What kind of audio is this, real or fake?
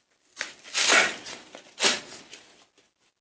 real